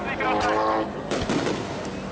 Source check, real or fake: real